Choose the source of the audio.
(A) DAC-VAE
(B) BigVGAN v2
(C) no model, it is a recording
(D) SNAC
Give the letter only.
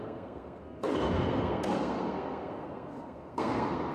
D